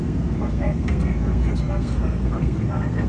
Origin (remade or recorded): remade